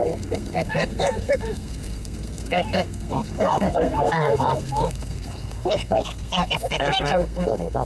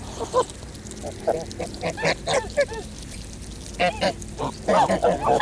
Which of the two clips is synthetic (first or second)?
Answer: first